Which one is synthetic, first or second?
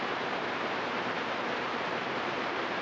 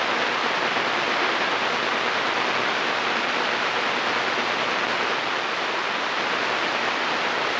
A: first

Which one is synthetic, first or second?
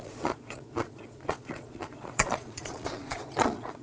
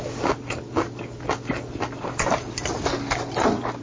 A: first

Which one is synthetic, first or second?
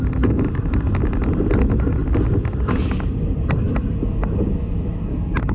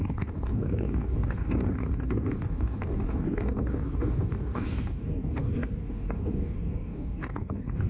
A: second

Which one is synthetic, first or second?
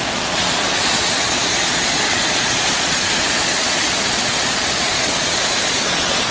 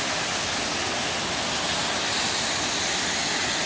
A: first